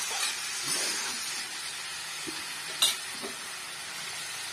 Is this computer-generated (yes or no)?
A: no